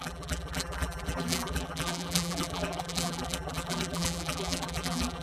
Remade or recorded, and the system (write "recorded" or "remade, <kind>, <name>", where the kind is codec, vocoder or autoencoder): remade, vocoder, BigVGAN v2